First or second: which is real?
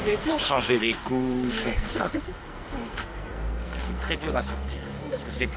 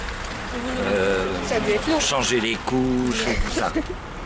second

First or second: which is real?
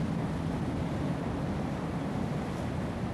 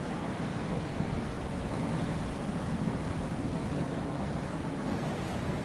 first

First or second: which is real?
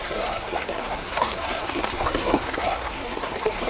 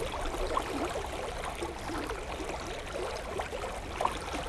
second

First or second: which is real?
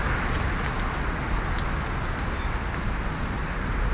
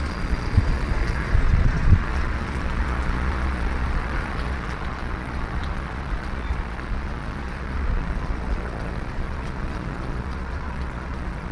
first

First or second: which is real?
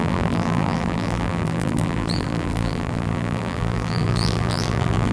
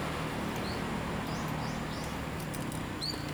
second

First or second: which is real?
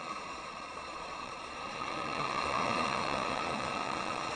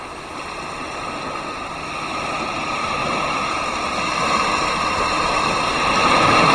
second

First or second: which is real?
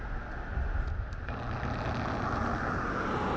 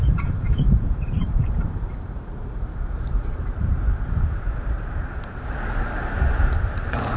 first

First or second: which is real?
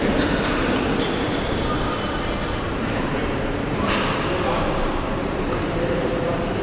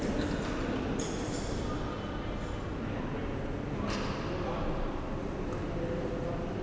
second